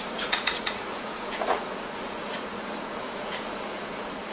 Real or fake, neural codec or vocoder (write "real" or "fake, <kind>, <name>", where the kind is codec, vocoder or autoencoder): fake, vocoder, Vocos